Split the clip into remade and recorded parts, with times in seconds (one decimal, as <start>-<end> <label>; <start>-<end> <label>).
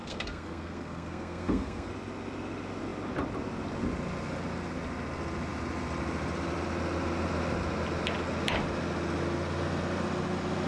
0.0-1.9 remade; 1.9-10.7 recorded